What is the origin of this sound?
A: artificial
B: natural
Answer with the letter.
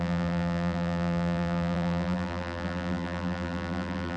A